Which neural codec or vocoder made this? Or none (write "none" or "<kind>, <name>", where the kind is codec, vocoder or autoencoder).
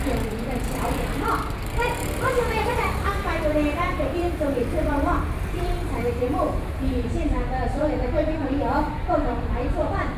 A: vocoder, BigVGAN v2